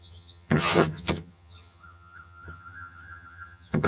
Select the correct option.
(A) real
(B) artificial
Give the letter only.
B